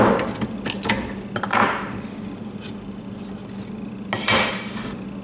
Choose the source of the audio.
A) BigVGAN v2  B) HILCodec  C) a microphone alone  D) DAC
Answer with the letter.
C